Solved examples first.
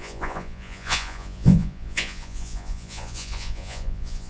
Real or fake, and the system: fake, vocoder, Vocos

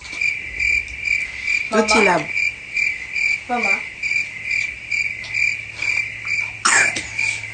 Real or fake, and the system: real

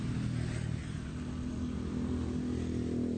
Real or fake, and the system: real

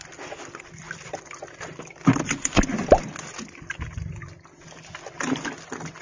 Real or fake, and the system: real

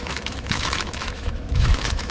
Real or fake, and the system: fake, autoencoder, DAC-VAE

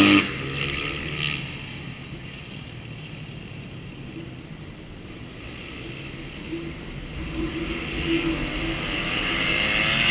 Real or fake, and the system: real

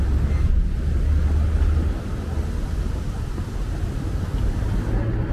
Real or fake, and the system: real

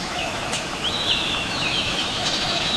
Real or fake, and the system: fake, autoencoder, DAC-VAE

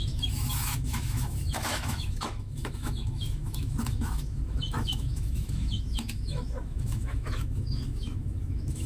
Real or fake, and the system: fake, autoencoder, DAC-VAE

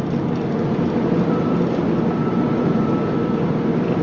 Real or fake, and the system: real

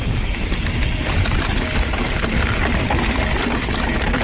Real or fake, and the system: fake, vocoder, BigVGAN v2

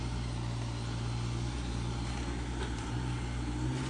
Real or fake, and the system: real